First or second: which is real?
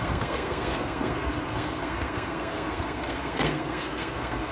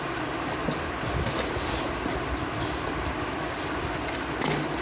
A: second